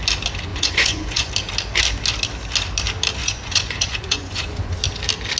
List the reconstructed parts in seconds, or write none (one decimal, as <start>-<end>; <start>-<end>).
0.5-1.3; 3.2-4.8